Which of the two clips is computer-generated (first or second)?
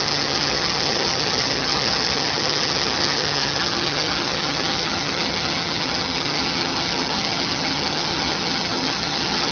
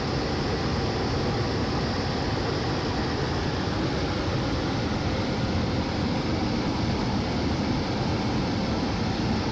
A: first